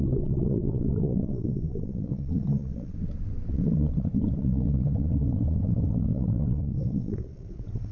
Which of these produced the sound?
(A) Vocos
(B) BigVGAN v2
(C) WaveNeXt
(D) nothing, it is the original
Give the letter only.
C